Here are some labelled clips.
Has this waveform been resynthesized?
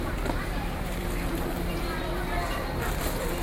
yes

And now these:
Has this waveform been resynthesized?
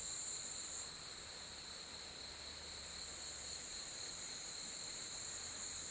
no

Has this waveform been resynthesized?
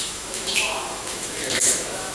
yes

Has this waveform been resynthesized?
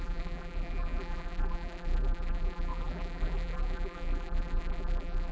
yes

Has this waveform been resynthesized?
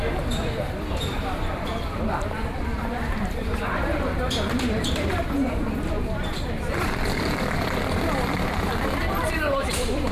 yes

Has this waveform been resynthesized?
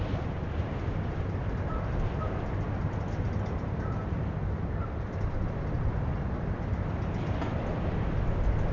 no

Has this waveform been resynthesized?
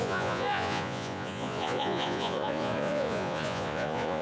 yes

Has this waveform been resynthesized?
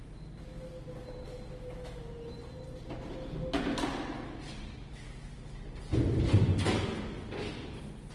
no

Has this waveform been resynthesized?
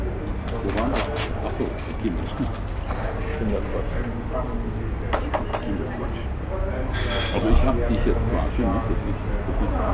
no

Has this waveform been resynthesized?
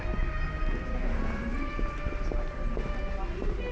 no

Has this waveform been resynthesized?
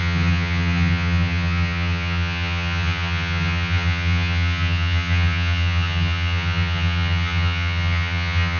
yes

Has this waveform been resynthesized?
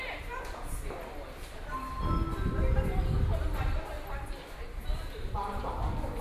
no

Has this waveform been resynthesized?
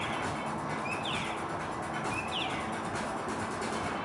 no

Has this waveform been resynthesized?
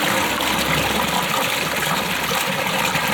no